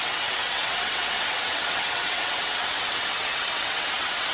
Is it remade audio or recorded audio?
remade